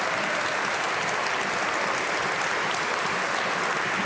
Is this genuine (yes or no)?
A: yes